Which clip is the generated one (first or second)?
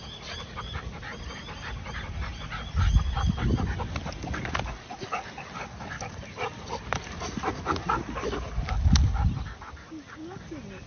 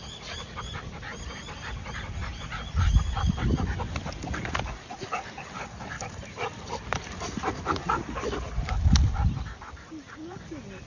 second